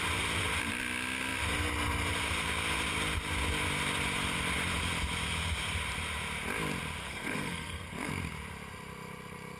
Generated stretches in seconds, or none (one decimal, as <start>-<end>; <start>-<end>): 7.0-8.1